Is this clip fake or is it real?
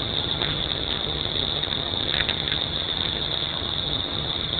fake